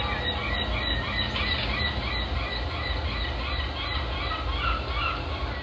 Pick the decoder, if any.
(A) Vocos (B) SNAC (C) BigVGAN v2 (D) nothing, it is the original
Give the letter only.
D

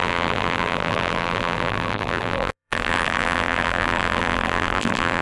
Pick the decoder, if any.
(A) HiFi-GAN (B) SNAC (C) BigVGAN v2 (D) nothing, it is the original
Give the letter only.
C